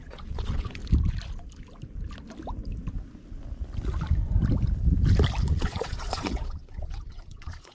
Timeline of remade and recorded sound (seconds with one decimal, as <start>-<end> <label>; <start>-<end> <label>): 0.0-0.8 remade; 0.8-5.4 recorded; 5.4-7.7 remade